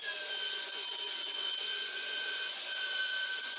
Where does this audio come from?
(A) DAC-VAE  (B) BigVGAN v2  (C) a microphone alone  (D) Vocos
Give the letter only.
D